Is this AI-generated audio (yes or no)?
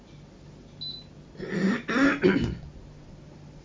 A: no